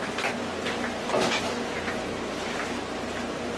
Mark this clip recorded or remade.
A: recorded